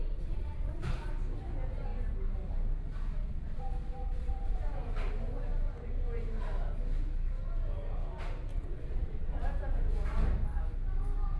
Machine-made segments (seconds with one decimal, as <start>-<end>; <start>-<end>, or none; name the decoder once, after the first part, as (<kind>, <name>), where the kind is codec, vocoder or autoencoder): 0.0-1.1 (vocoder, Vocos); 3.1-4.7; 8.5-9.5